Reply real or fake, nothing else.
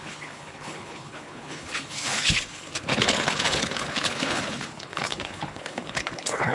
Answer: fake